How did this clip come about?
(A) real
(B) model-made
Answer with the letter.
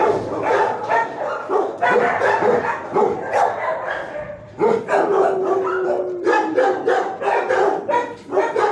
B